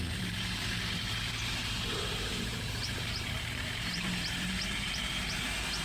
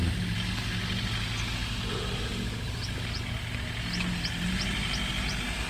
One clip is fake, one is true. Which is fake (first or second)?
first